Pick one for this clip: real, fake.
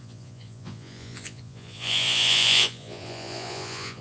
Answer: fake